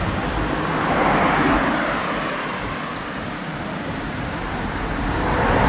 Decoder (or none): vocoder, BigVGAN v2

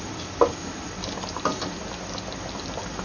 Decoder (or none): none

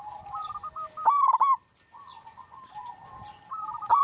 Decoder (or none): none